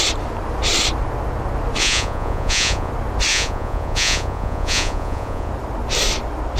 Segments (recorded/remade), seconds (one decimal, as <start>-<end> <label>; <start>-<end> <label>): 0.0-1.8 recorded; 1.8-2.9 remade; 2.9-3.3 recorded; 3.3-5.5 remade; 5.5-6.6 recorded